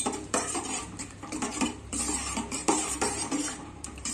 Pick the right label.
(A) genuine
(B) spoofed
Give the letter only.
B